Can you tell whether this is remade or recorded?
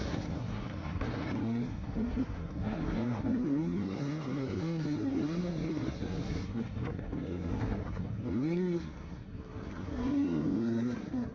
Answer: remade